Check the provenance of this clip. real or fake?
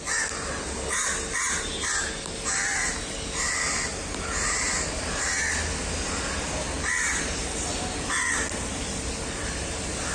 real